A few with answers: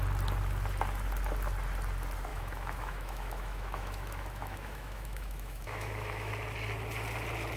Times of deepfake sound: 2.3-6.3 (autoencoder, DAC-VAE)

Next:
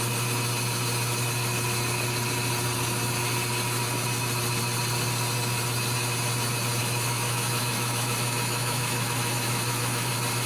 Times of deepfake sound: 6.8-10.1 (autoencoder, DAC-VAE)

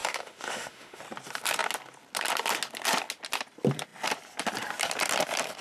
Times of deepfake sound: 0.0-1.0 (autoencoder, DAC-VAE)

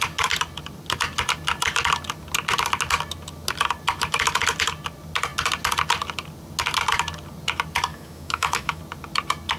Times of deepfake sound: 7.9-8.8 (autoencoder, DAC-VAE)

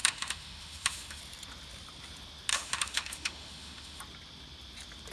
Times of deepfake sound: 0.0-1.2 (autoencoder, DAC-VAE); 2.5-4.0

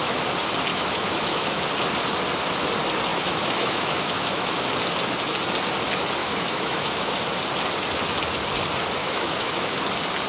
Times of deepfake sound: 0.7-1.6 (autoencoder, DAC-VAE); 3.1-4.5; 6.2-7.2; 9.0-9.8

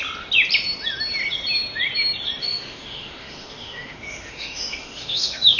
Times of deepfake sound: 2.4-5.6 (autoencoder, DAC-VAE)